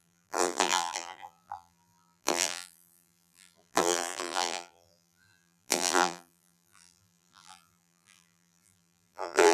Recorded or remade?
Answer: remade